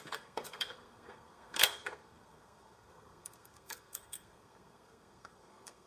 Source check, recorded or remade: remade